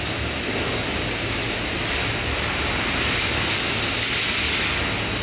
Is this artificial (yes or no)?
no